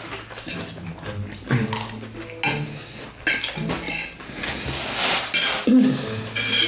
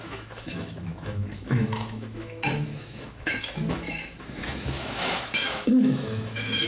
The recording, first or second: first